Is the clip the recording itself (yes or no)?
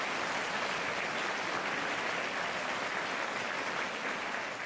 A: yes